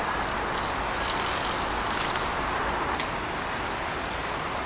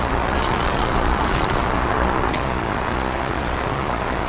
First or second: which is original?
first